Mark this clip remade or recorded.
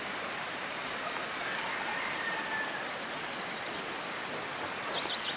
recorded